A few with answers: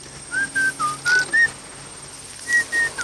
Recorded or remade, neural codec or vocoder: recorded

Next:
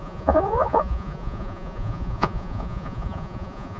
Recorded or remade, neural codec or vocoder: remade, vocoder, Vocos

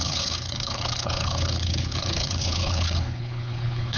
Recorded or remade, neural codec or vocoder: remade, codec, HILCodec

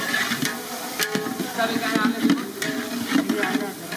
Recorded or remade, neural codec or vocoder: recorded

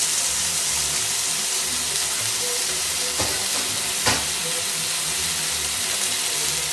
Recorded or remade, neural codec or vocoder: recorded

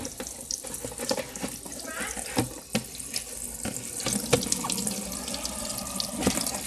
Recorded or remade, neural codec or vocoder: recorded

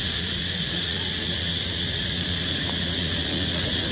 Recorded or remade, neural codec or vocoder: remade, vocoder, Vocos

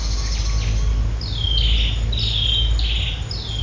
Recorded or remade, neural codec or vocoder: recorded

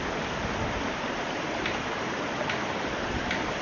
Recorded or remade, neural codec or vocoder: recorded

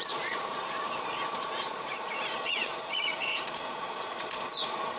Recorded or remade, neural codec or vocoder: remade, vocoder, Vocos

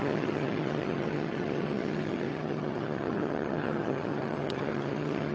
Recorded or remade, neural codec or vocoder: remade, vocoder, HiFi-GAN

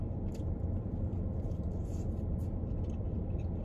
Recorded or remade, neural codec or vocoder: remade, vocoder, BigVGAN v2